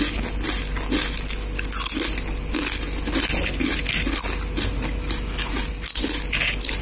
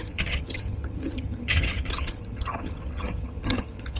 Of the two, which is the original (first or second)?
first